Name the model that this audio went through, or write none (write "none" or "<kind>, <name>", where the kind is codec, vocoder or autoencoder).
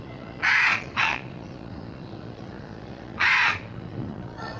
vocoder, Vocos